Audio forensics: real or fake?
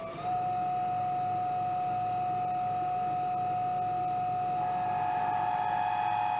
real